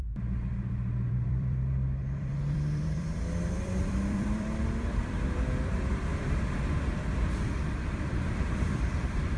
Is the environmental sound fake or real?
fake